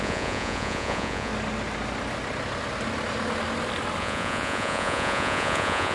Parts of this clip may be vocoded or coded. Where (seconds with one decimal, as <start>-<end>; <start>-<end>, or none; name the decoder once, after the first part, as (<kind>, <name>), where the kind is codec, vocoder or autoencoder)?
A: 0.0-1.3 (vocoder, Vocos); 4.0-5.9